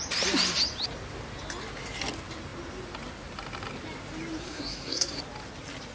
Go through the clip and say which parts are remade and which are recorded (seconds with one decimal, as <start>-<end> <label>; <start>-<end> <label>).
0.0-4.4 recorded; 4.4-5.2 remade; 5.2-5.9 recorded